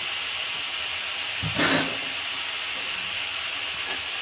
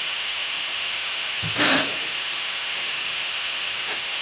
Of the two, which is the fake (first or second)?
second